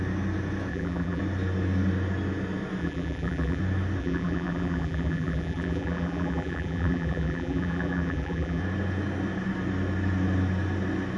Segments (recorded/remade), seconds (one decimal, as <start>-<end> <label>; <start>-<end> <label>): 0.0-0.7 recorded; 0.7-1.2 remade; 1.2-2.8 recorded; 2.8-3.6 remade; 3.6-4.0 recorded; 4.0-8.6 remade; 8.6-11.2 recorded